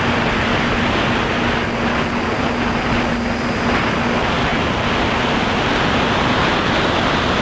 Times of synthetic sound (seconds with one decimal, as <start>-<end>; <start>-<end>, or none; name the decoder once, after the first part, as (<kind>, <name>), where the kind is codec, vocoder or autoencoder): none